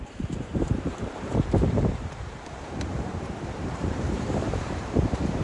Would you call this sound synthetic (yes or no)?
yes